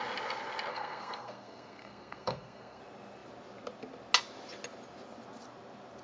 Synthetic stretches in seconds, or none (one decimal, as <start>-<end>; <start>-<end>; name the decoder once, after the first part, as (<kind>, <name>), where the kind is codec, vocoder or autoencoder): 0.7-2.8 (codec, SNAC)